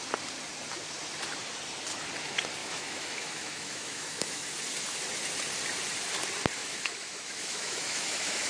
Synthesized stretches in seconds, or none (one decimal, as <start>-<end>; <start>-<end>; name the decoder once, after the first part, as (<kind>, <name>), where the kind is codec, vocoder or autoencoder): 2.6-4.5 (autoencoder, DAC-VAE); 6.6-8.5